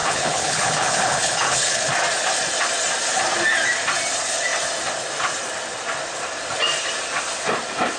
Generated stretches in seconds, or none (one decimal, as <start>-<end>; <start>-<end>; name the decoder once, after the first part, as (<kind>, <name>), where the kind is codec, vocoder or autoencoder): 0.0-1.8 (codec, HILCodec)